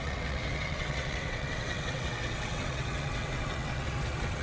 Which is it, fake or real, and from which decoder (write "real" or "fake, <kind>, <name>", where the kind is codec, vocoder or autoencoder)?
fake, vocoder, WaveNeXt